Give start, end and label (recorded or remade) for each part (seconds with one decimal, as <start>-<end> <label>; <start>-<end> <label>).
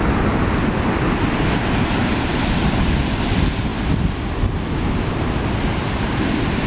0.0-6.7 recorded